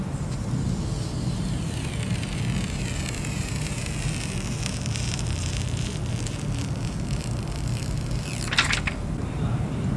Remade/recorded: remade